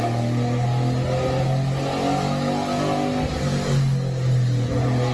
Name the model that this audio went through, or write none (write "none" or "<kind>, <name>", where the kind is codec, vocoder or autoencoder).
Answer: none